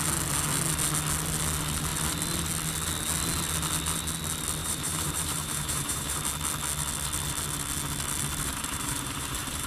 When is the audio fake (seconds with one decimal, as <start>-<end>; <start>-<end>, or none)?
4.6-6.2; 8.5-9.7